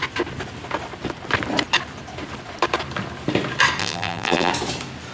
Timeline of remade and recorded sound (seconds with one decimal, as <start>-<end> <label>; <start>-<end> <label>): 0.0-3.8 recorded; 3.8-4.5 remade; 4.5-5.1 recorded

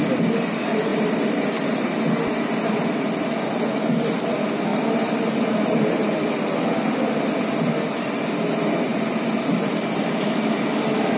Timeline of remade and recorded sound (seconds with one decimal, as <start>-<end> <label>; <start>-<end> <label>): 0.0-0.9 recorded; 0.9-1.4 remade; 1.4-4.7 recorded; 4.7-5.3 remade; 5.3-11.2 recorded